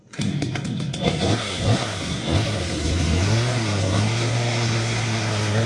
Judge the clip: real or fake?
fake